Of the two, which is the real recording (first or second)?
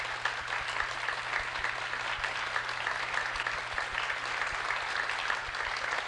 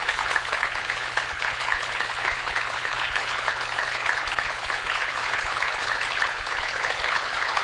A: first